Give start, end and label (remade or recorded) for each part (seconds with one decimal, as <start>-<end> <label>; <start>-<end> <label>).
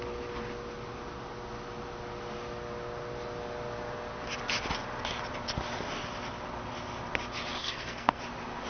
0.0-7.6 recorded; 7.6-8.2 remade; 8.2-8.7 recorded